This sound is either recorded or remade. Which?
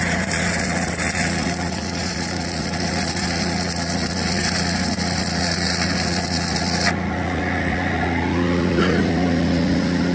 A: remade